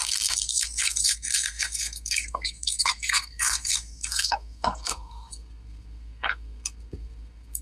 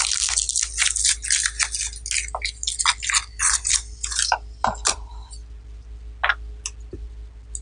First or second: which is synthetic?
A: first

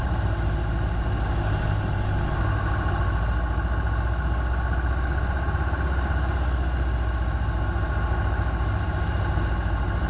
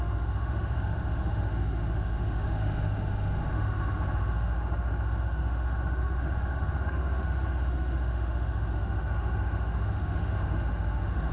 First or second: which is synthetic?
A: second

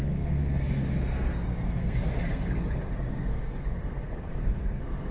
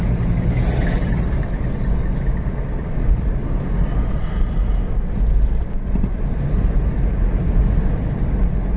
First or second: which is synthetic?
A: first